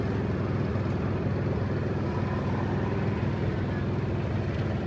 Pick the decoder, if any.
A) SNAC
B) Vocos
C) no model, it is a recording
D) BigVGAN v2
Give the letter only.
C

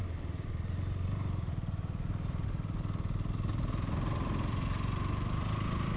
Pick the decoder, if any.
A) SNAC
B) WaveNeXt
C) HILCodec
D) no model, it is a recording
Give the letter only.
D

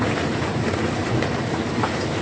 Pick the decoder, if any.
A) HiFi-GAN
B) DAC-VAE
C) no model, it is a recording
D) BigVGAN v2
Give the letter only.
D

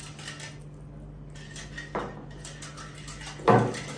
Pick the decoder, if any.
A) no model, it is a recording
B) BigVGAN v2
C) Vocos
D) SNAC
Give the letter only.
A